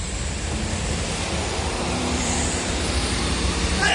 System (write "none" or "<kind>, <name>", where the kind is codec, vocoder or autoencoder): vocoder, BigVGAN v2